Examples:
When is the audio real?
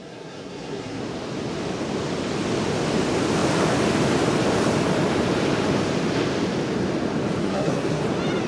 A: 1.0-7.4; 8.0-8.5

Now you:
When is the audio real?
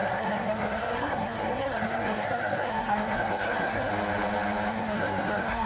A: 3.9-4.7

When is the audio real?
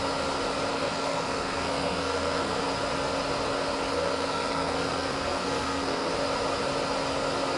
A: 0.0-0.7; 2.6-3.9; 6.1-7.6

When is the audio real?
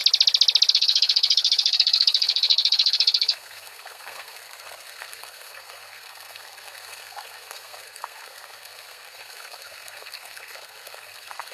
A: 0.0-0.7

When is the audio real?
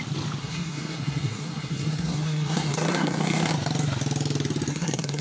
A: 0.0-0.4; 3.5-4.7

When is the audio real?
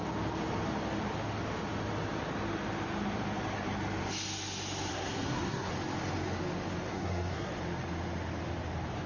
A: 0.0-4.9; 5.7-6.9; 7.5-9.1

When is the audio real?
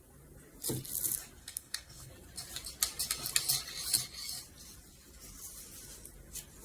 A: 0.0-1.4; 2.1-6.6